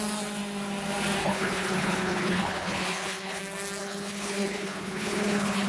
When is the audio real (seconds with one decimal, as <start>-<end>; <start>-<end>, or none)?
0.0-1.2; 3.4-3.8